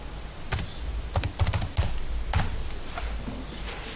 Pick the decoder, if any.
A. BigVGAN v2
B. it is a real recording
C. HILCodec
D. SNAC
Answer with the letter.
B